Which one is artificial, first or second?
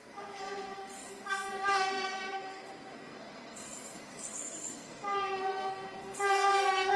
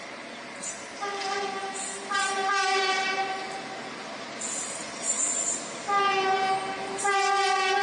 first